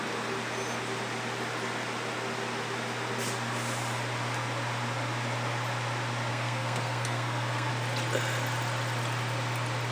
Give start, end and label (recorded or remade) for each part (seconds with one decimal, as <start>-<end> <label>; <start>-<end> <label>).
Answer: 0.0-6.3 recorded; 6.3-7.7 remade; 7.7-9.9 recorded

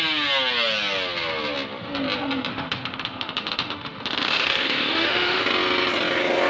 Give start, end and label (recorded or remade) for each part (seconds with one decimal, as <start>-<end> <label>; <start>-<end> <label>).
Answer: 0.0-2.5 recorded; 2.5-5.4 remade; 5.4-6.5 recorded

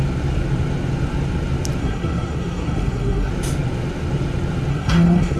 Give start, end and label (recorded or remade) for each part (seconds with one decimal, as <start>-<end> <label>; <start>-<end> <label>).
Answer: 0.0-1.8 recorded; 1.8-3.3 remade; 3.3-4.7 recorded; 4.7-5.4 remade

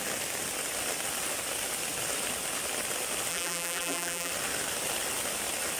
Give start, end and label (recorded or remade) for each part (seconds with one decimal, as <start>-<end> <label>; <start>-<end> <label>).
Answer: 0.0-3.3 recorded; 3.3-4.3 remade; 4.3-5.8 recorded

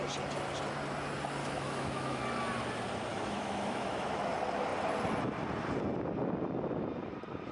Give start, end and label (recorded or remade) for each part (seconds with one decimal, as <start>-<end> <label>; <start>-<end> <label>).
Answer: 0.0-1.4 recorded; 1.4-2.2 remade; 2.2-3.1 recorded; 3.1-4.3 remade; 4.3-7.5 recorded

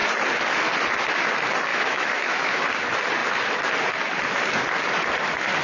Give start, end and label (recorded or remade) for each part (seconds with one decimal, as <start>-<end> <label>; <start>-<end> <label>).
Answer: 0.0-1.7 recorded; 1.7-2.6 remade; 2.6-5.6 recorded